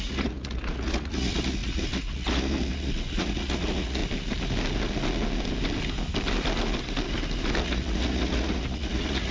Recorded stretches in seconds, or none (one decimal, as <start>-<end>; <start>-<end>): 4.0-7.6